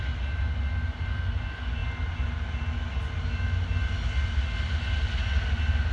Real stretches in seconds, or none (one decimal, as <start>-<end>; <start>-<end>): 0.0-5.9